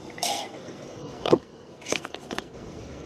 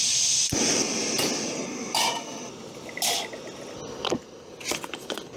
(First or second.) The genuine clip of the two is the second